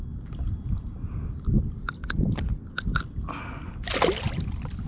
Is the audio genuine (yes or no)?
yes